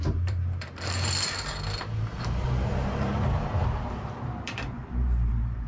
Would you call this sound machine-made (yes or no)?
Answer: yes